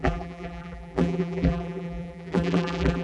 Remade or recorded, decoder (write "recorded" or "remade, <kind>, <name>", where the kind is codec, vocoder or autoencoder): remade, vocoder, BigVGAN v2